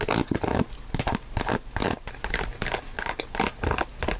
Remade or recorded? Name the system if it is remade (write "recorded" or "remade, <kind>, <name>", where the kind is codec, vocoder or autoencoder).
recorded